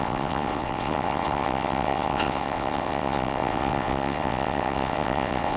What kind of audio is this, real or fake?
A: fake